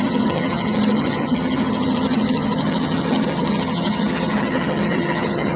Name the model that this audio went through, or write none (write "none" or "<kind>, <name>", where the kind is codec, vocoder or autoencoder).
vocoder, HiFi-GAN